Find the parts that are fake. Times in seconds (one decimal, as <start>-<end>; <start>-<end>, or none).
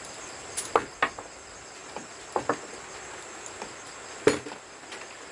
none